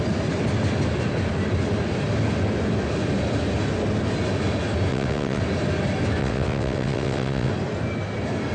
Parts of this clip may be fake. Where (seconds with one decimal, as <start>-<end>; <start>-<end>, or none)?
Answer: 4.9-5.4; 6.2-7.5